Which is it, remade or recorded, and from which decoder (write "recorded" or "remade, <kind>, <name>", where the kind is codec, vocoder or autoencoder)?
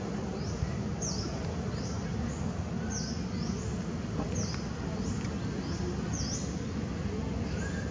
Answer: recorded